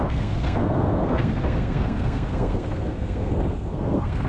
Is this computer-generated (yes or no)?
yes